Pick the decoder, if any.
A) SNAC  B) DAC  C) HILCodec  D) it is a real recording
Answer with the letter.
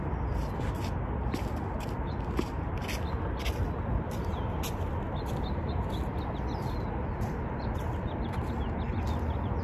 D